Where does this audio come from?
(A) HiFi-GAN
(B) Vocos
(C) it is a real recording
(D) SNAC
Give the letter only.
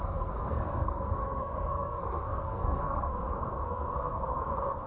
D